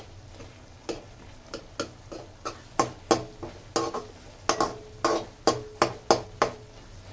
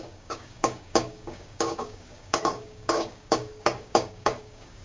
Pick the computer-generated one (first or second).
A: second